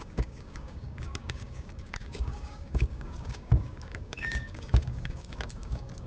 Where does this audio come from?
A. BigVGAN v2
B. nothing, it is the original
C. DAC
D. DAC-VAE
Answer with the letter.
C